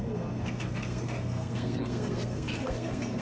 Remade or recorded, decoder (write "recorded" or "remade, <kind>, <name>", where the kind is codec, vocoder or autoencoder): remade, codec, SNAC